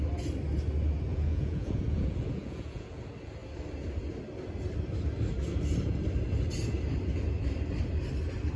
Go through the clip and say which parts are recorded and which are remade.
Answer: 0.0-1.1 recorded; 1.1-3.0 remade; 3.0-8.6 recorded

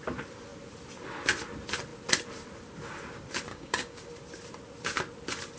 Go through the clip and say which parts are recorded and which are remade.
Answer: 0.0-3.5 recorded; 3.5-4.0 remade; 4.0-5.6 recorded

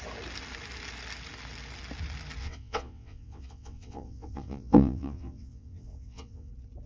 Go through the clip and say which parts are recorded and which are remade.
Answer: 0.0-2.4 recorded; 2.4-6.5 remade; 6.5-6.9 recorded

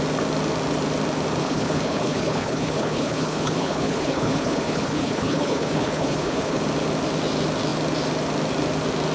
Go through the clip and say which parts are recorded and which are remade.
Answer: 0.0-1.4 recorded; 1.4-6.6 remade; 6.6-9.1 recorded

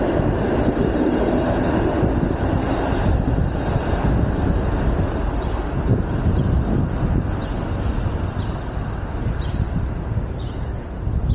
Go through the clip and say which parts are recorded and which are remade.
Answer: 0.0-5.9 recorded; 5.9-7.0 remade; 7.0-11.3 recorded

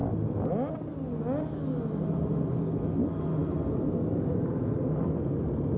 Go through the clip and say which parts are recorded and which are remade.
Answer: 0.0-5.8 recorded

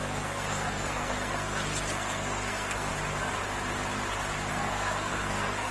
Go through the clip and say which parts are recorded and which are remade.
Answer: 0.0-2.9 remade; 2.9-4.5 recorded; 4.5-5.7 remade